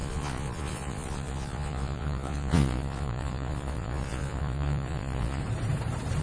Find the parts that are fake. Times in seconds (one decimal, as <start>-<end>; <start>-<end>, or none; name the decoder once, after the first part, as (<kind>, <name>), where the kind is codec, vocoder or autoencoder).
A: 0.0-5.4 (vocoder, Vocos)